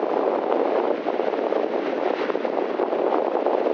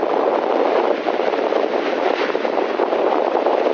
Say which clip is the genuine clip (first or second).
first